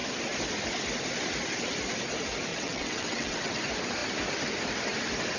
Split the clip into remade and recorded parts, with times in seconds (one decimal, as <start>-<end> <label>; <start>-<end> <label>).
0.0-2.5 recorded; 2.5-3.6 remade; 3.6-5.4 recorded